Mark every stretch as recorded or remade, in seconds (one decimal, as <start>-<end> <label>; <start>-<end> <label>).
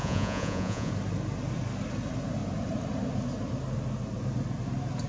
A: 0.0-0.9 remade; 0.9-5.1 recorded